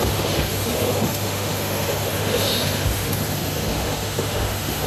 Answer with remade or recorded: remade